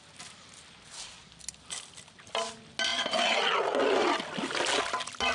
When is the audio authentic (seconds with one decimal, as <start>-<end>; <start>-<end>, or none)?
0.0-5.3